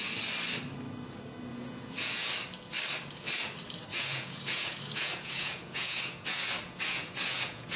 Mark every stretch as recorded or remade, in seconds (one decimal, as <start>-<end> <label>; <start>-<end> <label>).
0.0-1.5 recorded; 1.5-2.3 remade; 2.3-3.9 recorded; 3.9-7.8 remade